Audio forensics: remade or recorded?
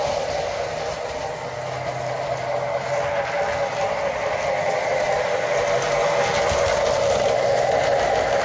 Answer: recorded